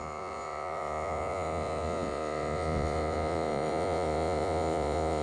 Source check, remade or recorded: remade